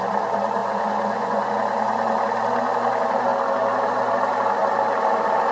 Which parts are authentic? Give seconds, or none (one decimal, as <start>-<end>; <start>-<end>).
0.0-0.6; 1.5-5.5